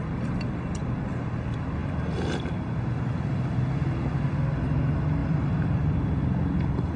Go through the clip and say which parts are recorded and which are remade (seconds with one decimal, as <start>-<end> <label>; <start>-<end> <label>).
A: 0.0-5.2 recorded; 5.2-5.9 remade; 5.9-7.0 recorded

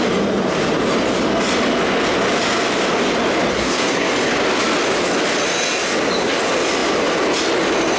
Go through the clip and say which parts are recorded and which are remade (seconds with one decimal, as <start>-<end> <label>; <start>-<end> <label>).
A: 0.0-3.5 recorded; 3.5-4.1 remade; 4.1-8.0 recorded